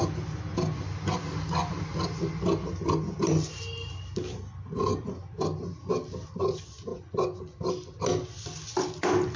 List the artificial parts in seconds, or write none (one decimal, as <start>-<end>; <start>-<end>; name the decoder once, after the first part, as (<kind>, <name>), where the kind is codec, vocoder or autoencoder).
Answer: none